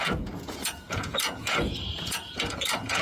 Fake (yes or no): yes